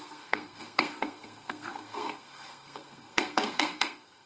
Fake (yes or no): yes